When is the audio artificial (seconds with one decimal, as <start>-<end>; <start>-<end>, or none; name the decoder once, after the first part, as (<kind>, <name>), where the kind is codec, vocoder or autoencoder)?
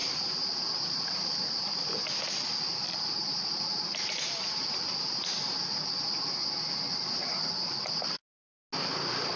0.0-1.8 (vocoder, BigVGAN v2)